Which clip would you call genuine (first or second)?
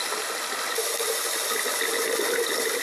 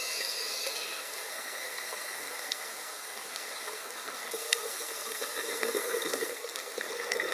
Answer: first